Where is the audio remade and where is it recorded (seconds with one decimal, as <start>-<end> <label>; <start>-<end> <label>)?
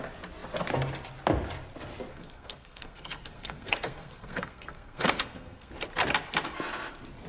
0.0-2.1 recorded; 2.1-5.7 remade; 5.7-7.3 recorded